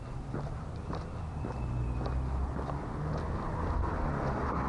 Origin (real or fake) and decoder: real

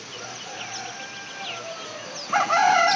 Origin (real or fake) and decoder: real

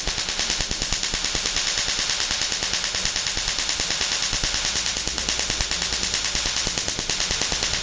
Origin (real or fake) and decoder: real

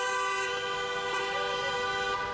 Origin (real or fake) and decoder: real